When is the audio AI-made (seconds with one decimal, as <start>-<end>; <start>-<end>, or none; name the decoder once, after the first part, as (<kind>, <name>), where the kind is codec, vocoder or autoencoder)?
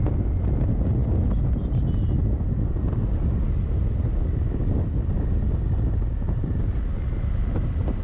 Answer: none